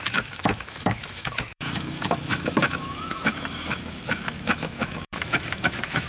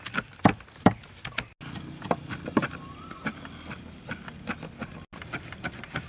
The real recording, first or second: second